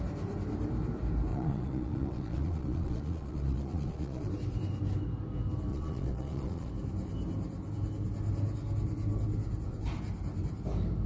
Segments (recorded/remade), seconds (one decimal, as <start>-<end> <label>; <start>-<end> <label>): 0.0-1.3 recorded; 1.3-4.3 remade; 4.3-5.7 recorded; 5.7-6.7 remade; 6.7-11.1 recorded